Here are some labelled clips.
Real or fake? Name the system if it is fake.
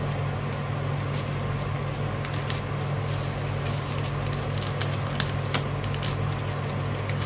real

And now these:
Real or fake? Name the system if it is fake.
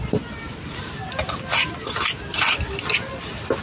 real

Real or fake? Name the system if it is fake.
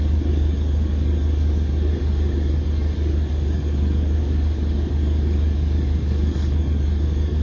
fake, codec, DAC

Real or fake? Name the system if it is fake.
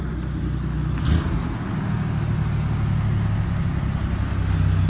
real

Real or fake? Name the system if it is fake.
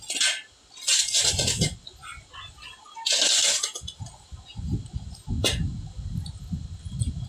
real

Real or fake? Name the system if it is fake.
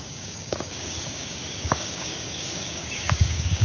fake, codec, DAC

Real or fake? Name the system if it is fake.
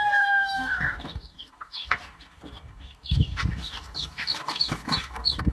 fake, codec, DAC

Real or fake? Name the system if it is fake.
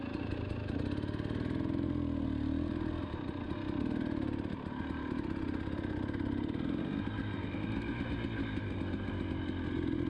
real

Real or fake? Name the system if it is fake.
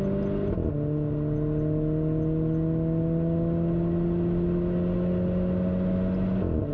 real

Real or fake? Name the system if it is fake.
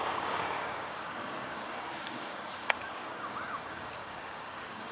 fake, codec, DAC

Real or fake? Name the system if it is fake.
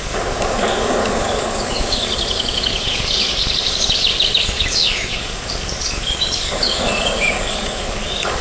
fake, codec, DAC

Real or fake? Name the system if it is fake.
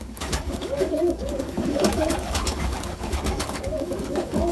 fake, codec, DAC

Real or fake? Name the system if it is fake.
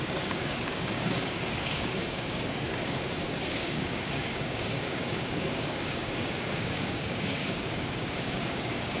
fake, codec, DAC